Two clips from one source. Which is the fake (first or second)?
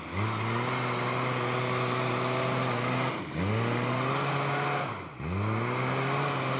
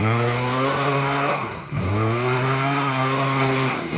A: second